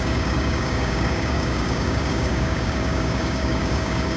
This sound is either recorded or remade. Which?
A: remade